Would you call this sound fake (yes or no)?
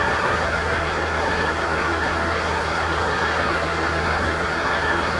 yes